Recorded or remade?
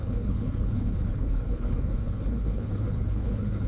remade